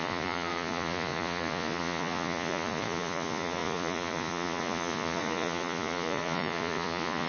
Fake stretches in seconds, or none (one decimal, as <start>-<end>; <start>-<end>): 0.0-7.3